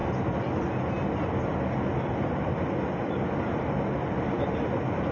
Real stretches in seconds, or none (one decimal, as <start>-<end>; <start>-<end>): 0.0-5.1

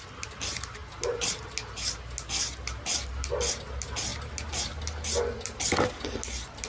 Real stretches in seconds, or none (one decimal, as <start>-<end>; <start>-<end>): 0.0-6.7

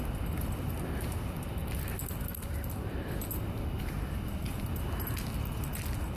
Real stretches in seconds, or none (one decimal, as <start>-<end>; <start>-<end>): 0.0-6.2